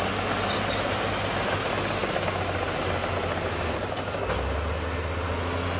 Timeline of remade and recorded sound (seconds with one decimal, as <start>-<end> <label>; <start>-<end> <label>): 0.0-5.8 recorded